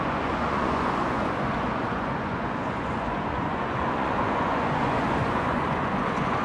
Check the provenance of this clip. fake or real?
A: fake